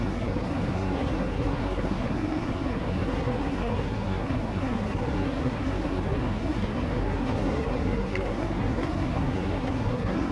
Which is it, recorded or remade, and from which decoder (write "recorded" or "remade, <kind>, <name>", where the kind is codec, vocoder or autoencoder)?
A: remade, codec, SNAC